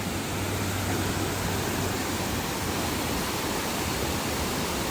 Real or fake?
real